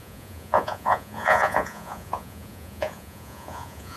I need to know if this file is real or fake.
fake